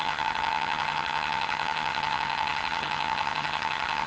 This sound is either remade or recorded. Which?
remade